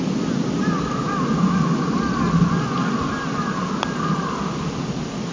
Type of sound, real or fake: real